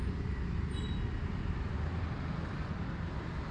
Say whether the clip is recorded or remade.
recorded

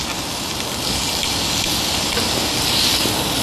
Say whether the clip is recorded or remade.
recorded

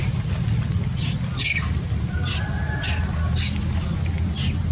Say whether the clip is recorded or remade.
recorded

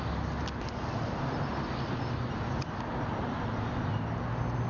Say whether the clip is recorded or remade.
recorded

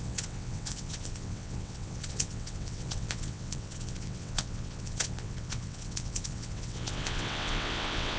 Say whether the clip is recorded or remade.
remade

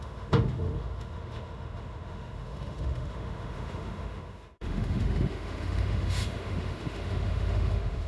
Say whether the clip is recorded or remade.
remade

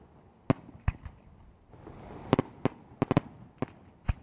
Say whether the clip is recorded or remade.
recorded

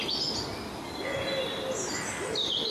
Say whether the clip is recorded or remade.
recorded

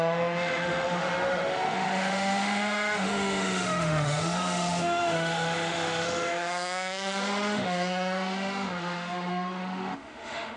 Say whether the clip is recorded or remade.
remade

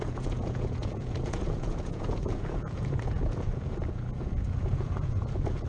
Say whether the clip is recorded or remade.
remade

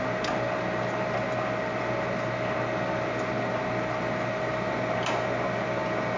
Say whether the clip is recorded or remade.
recorded